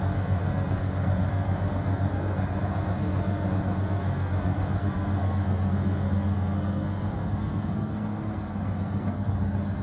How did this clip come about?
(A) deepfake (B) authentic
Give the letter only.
A